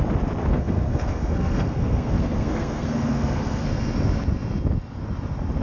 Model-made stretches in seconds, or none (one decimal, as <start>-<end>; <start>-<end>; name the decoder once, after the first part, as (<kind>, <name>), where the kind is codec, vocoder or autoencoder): 0.5-3.7 (codec, SNAC)